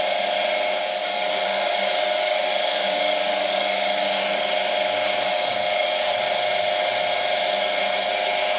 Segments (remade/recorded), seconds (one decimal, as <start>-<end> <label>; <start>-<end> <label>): 0.0-1.0 recorded; 1.0-4.4 remade; 4.4-5.3 recorded; 5.3-6.1 remade; 6.1-8.6 recorded